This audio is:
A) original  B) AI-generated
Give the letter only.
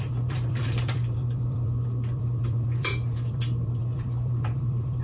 B